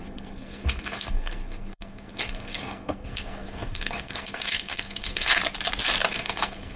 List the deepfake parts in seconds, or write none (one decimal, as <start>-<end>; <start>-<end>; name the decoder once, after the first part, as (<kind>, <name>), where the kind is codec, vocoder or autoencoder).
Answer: 0.0-5.4 (codec, SNAC); 6.1-6.8